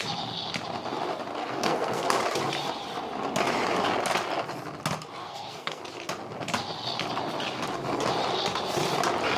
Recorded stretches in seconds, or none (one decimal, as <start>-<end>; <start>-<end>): 0.0-1.4; 2.2-5.2; 5.8-9.4